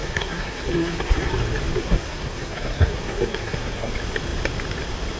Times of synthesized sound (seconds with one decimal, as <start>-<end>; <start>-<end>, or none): 0.0-1.3; 1.8-3.9

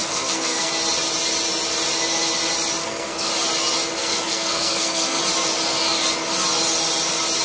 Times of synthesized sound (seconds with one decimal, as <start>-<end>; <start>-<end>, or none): 0.0-0.7; 2.8-3.3; 4.0-5.2

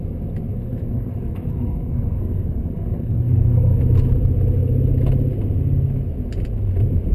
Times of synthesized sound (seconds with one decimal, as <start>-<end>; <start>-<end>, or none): 0.5-3.8

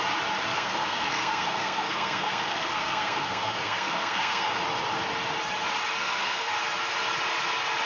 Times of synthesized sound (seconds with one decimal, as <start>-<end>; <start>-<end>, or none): 0.5-4.6; 6.0-6.5

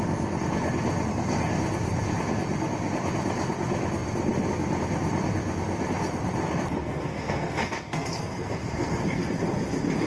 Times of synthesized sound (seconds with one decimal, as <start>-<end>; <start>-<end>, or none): 6.8-9.2

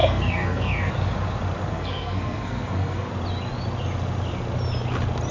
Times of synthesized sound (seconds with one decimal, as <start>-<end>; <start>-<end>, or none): 0.0-0.9; 1.7-3.1

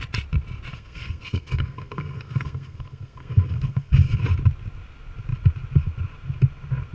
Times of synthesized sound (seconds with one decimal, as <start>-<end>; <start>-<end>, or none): 0.7-4.2

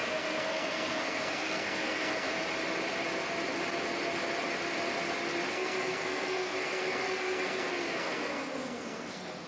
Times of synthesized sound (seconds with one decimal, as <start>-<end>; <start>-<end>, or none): 0.0-2.3; 5.5-9.5